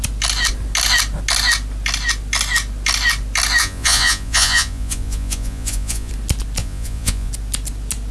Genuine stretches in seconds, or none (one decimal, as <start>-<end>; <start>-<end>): 0.0-3.6; 6.1-6.6; 7.3-8.1